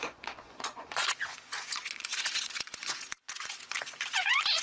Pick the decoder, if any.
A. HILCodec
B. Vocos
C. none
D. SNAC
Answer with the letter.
B